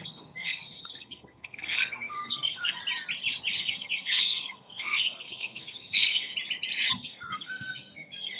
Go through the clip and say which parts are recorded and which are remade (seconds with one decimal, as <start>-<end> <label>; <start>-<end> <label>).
0.0-2.8 remade; 2.8-3.6 recorded; 3.6-6.3 remade; 6.3-6.9 recorded; 6.9-8.4 remade